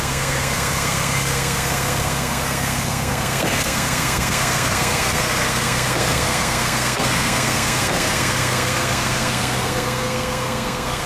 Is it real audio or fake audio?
fake